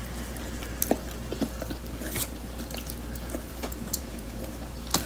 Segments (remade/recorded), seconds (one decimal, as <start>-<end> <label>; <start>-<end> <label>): 0.0-3.5 recorded; 3.5-4.4 remade; 4.4-5.1 recorded

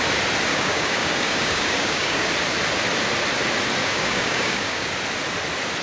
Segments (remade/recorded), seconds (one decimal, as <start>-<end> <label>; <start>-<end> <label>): 0.0-0.5 recorded; 0.5-2.3 remade; 2.3-3.8 recorded; 3.8-4.9 remade; 4.9-5.8 recorded